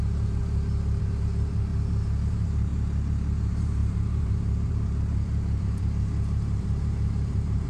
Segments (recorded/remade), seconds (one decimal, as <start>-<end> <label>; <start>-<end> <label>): 0.0-0.4 remade; 0.4-1.0 recorded; 1.0-1.7 remade; 1.7-2.3 recorded; 2.3-2.7 remade; 2.7-3.4 recorded; 3.4-7.7 remade